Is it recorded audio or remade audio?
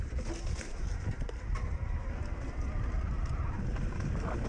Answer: recorded